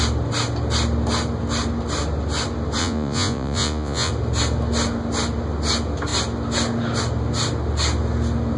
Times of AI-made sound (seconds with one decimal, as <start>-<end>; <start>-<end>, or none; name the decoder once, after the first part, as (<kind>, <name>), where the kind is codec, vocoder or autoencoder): 2.8-4.1 (vocoder, Vocos)